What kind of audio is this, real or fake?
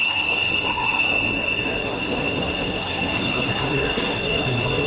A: fake